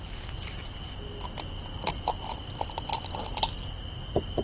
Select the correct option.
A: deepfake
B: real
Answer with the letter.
B